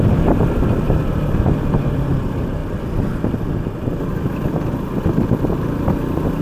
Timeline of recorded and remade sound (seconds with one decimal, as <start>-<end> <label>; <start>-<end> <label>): 0.0-2.6 remade; 2.6-6.4 recorded